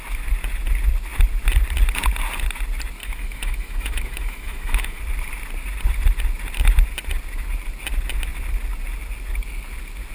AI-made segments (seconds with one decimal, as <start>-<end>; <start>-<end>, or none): 3.0-5.0